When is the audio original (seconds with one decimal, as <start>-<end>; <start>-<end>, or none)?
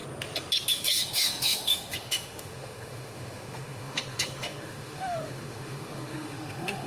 0.0-0.7